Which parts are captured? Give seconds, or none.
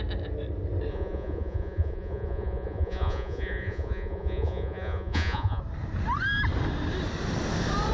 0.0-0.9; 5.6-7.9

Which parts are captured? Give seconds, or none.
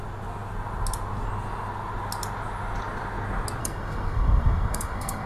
0.0-3.6